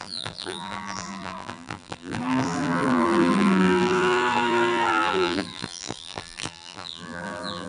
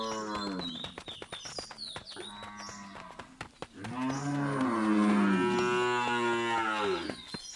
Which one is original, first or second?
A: second